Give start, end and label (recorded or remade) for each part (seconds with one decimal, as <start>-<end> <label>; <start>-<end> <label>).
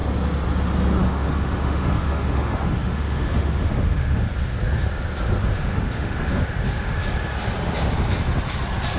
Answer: 0.0-1.0 recorded; 1.0-4.3 remade; 4.3-5.4 recorded; 5.4-7.0 remade; 7.0-9.0 recorded